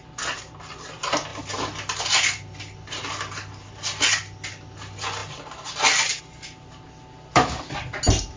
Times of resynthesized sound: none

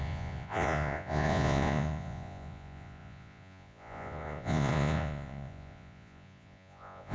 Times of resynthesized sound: 0.0-7.1 (vocoder, Vocos)